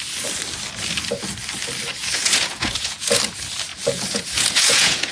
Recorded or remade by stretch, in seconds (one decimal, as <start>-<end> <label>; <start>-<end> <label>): 0.0-1.9 recorded; 1.9-3.2 remade; 3.2-3.7 recorded; 3.7-5.1 remade